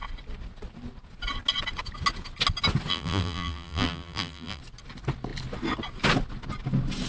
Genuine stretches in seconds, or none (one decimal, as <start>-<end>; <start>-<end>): 0.0-2.9; 4.6-7.1